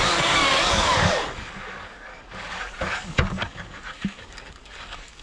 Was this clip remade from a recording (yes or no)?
yes